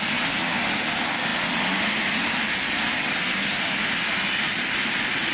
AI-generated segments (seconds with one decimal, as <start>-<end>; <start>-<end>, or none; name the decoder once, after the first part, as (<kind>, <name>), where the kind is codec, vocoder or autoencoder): none